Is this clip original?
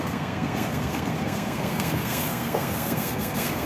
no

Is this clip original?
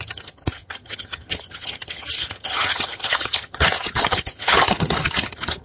no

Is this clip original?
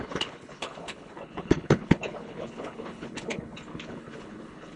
no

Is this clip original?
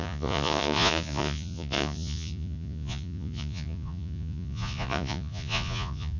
no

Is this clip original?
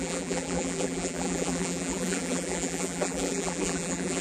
no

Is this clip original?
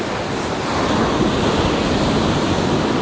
yes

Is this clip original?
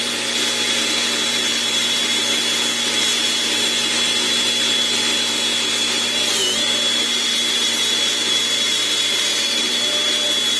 yes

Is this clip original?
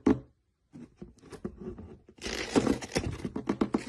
yes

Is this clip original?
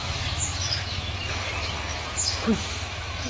no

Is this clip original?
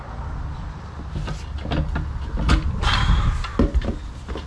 yes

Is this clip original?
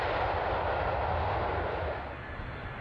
yes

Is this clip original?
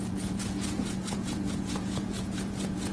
no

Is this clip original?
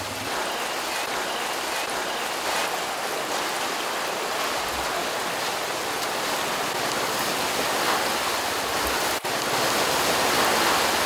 yes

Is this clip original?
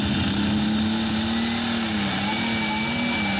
yes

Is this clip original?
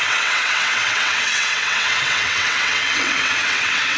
no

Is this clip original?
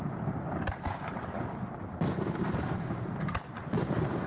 no